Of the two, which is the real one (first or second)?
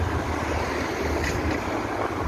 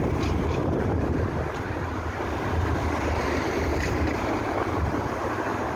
first